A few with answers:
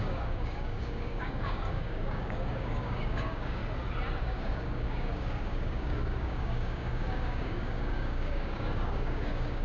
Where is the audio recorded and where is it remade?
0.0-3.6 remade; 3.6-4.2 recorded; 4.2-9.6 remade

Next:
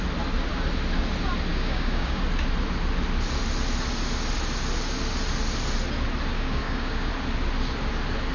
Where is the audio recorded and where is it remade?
0.0-1.5 recorded; 1.5-2.2 remade; 2.2-6.3 recorded; 6.3-7.1 remade; 7.1-8.3 recorded

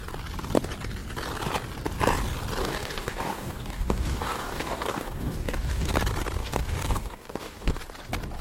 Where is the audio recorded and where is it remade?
0.0-2.6 recorded; 2.6-5.9 remade; 5.9-6.4 recorded; 6.4-7.8 remade; 7.8-8.4 recorded

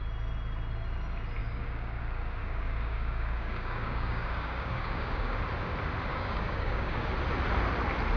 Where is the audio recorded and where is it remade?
0.0-1.4 recorded; 1.4-2.0 remade; 2.0-2.4 recorded; 2.4-5.4 remade; 5.4-6.1 recorded; 6.1-7.1 remade; 7.1-8.2 recorded

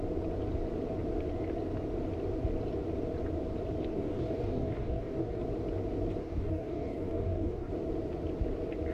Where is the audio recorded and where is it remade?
0.0-3.9 recorded; 3.9-5.4 remade; 5.4-6.2 recorded; 6.2-7.7 remade; 7.7-8.9 recorded

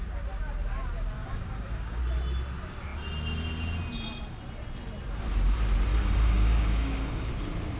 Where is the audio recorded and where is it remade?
0.0-1.2 recorded; 1.2-2.0 remade; 2.0-5.9 recorded; 5.9-7.3 remade; 7.3-7.8 recorded

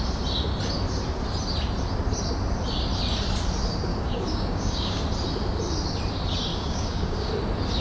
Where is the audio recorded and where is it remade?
0.0-3.9 recorded; 3.9-5.0 remade; 5.0-6.5 recorded; 6.5-7.3 remade; 7.3-7.8 recorded

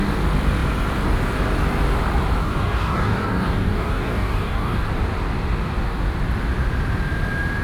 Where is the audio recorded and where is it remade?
0.0-2.4 recorded; 2.4-4.9 remade; 4.9-7.6 recorded